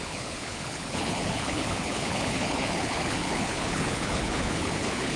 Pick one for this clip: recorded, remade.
remade